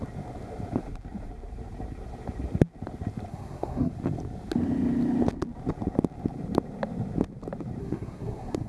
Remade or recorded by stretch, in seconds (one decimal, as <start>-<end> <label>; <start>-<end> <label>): 0.0-3.3 recorded; 3.3-3.9 remade; 3.9-7.8 recorded; 7.8-8.7 remade